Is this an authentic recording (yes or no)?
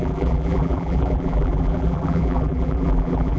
no